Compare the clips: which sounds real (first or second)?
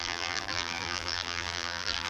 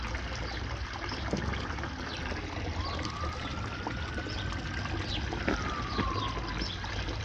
second